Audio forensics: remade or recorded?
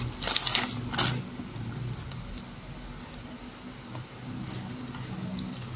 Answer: recorded